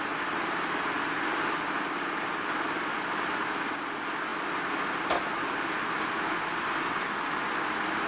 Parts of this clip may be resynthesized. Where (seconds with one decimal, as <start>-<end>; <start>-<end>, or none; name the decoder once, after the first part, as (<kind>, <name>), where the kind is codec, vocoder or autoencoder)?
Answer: none